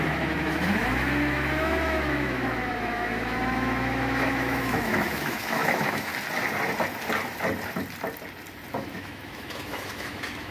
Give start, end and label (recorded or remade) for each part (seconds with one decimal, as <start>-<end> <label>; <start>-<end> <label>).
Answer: 0.0-6.1 remade; 6.1-8.7 recorded; 8.7-10.5 remade